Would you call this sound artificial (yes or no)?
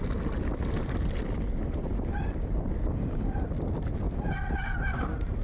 no